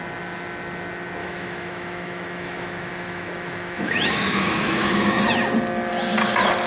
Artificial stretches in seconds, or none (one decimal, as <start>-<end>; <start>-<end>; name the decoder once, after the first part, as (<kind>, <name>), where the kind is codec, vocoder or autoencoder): 1.2-5.2 (autoencoder, DAC-VAE)